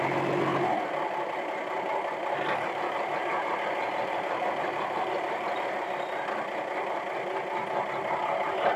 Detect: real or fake real